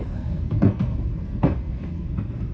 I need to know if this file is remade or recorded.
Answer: remade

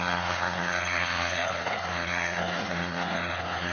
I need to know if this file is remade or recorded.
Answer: remade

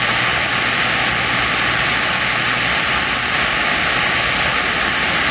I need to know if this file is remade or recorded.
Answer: recorded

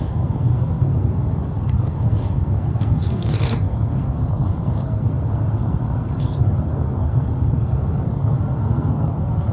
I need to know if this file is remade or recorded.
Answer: remade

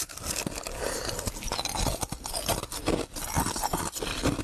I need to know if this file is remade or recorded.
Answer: recorded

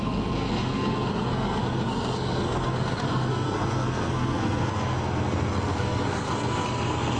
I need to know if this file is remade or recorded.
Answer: remade